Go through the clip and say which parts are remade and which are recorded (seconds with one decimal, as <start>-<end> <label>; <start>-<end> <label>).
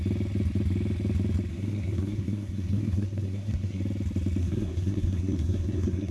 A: 0.0-1.5 recorded; 1.5-3.8 remade; 3.8-4.4 recorded; 4.4-6.1 remade